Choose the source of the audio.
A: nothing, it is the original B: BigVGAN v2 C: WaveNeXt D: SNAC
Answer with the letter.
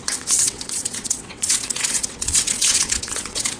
C